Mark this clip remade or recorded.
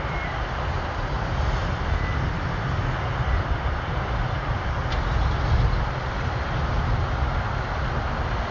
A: recorded